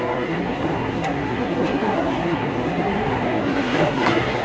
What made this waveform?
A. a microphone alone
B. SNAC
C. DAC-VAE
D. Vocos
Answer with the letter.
B